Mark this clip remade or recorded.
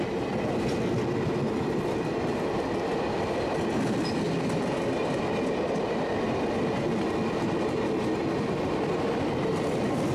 recorded